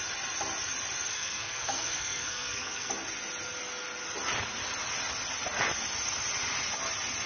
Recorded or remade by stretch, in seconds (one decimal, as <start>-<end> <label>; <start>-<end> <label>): 0.0-1.1 recorded; 1.1-2.9 remade; 2.9-7.3 recorded